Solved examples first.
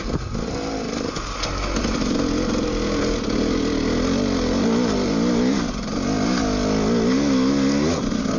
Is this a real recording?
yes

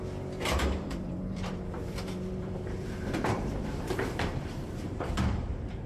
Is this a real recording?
no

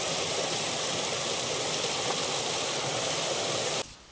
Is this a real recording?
no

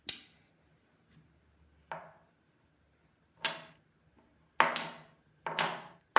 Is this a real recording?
yes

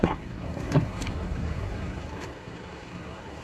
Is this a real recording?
no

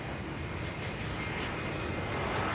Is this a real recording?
yes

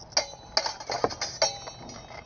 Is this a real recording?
yes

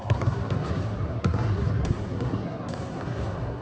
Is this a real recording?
no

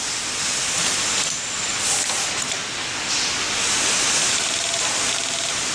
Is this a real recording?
yes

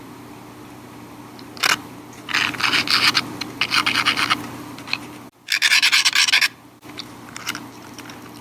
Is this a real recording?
yes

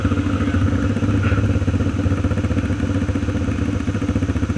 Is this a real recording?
yes